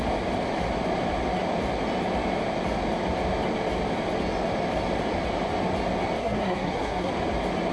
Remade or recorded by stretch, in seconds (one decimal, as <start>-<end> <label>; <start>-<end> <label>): 0.0-6.2 recorded; 6.2-7.1 remade; 7.1-7.7 recorded